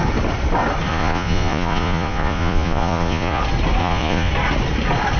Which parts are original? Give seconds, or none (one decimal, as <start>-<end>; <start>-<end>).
0.0-0.9; 3.4-3.8; 4.3-5.2